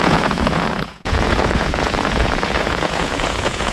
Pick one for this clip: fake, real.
fake